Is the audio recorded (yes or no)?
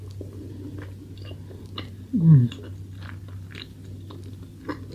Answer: yes